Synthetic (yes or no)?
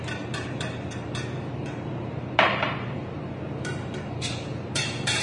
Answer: yes